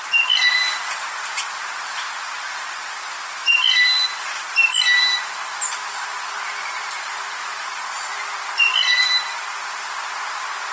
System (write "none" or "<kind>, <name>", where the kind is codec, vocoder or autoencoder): none